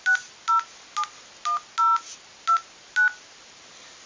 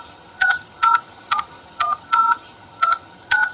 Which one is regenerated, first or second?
second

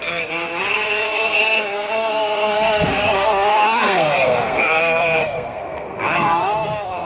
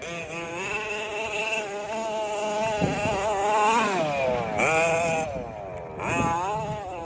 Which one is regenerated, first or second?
first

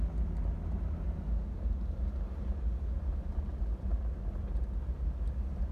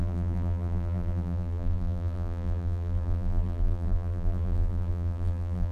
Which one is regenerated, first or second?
second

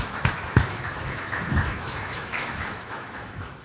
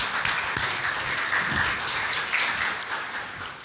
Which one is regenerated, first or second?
first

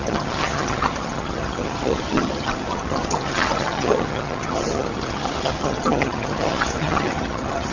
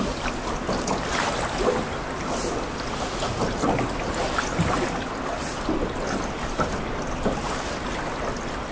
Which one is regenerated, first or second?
first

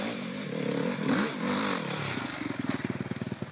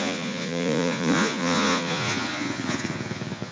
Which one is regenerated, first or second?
second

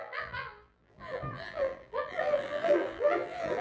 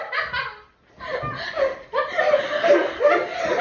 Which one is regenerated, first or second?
first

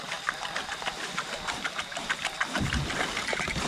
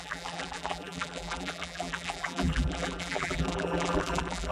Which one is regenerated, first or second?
second